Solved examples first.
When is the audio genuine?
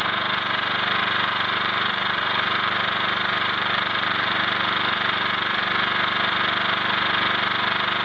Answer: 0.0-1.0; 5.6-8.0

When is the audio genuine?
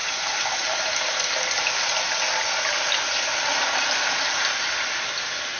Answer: 1.1-3.5; 4.5-5.6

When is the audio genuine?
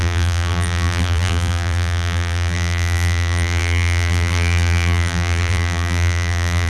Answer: none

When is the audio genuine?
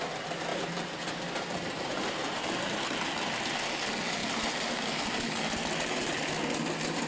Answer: 0.0-0.5; 2.4-7.1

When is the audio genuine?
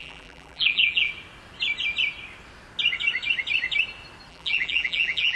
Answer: 1.1-4.3